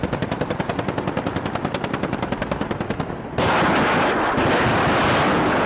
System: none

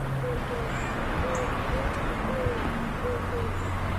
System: none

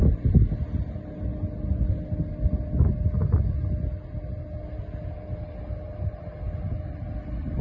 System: none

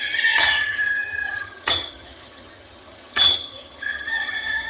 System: vocoder, HiFi-GAN